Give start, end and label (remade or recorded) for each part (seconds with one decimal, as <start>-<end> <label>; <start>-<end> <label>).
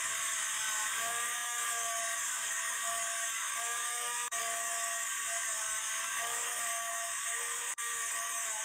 0.0-8.6 remade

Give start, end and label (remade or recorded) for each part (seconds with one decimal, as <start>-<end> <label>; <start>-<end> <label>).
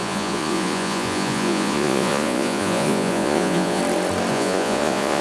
0.0-3.8 remade; 3.8-4.3 recorded; 4.3-5.2 remade